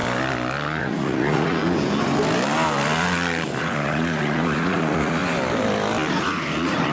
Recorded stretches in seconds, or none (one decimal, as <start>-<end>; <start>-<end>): 0.0-0.8; 1.6-3.6; 5.2-6.1